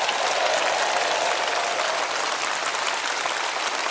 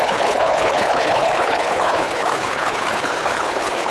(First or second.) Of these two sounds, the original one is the first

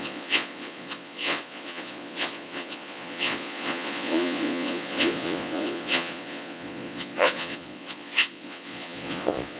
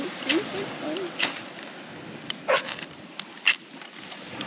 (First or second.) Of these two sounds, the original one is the second